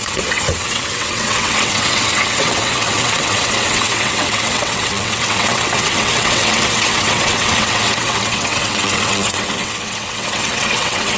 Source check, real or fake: fake